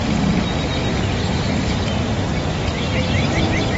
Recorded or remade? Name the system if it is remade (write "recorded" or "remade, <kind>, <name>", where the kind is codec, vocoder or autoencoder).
recorded